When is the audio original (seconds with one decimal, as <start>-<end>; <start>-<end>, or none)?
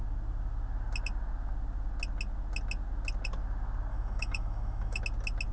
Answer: 0.0-3.9; 5.0-5.5